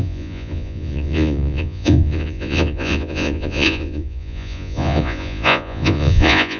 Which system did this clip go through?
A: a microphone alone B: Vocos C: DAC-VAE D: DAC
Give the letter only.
B